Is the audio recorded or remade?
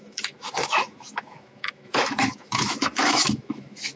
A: remade